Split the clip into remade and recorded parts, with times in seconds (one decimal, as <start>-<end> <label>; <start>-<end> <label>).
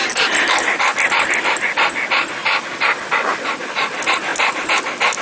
0.0-5.2 recorded